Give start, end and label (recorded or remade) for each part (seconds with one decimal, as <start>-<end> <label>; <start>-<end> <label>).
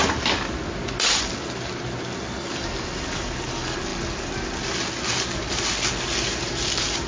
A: 0.0-7.1 recorded